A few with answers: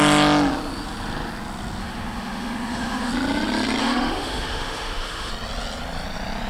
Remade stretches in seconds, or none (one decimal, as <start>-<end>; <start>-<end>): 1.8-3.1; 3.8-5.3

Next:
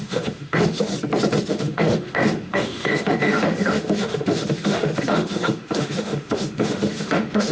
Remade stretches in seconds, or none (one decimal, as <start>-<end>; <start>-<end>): 0.0-0.9; 1.5-7.5

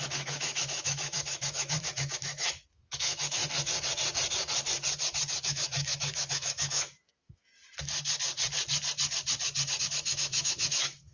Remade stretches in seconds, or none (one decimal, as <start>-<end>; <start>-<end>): 0.0-3.4; 5.4-7.5; 9.8-11.1